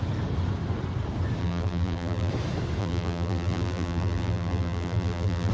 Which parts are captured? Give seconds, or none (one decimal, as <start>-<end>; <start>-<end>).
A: 0.0-1.4; 2.3-2.8